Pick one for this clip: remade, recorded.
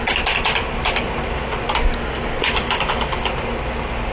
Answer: recorded